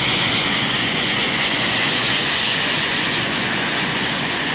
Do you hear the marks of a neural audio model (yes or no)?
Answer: yes